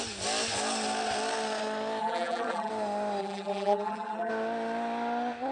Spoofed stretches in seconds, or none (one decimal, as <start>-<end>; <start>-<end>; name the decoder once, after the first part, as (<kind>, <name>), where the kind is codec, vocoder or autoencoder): 2.0-2.7 (vocoder, BigVGAN v2); 3.2-4.3